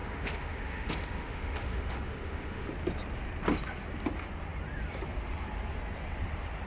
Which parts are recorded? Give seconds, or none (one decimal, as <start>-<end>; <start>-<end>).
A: 2.7-6.7